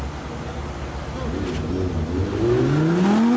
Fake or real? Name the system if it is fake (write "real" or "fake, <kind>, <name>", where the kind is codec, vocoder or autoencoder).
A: real